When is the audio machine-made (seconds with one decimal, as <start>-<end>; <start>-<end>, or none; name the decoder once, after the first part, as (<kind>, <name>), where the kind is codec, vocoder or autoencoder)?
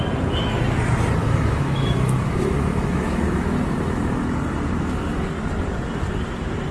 1.2-5.2 (autoencoder, DAC-VAE)